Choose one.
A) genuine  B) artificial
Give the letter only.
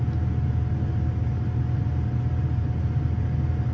A